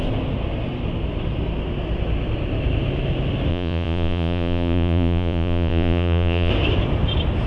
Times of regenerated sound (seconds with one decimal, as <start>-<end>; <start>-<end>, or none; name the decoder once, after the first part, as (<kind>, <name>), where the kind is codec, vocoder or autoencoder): 3.5-6.5 (vocoder, Vocos)

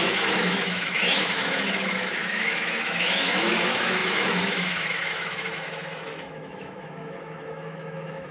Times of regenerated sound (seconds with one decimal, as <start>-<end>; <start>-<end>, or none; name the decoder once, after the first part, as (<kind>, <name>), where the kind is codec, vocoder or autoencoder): 0.0-8.3 (autoencoder, DAC-VAE)

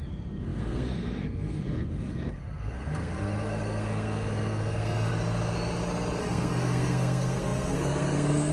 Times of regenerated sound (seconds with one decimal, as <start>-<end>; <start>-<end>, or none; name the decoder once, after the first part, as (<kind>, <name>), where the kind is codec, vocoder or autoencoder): 0.0-5.1 (codec, SNAC); 6.2-8.5

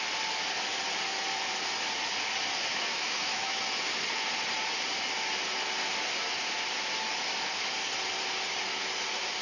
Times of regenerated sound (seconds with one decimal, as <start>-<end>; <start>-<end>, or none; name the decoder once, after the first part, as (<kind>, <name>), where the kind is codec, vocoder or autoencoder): 2.7-3.6 (autoencoder, DAC-VAE)

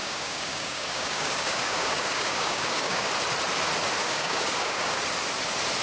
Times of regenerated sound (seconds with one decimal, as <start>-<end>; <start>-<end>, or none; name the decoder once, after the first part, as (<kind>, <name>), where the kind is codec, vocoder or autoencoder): 0.0-3.1 (codec, DAC); 4.0-5.0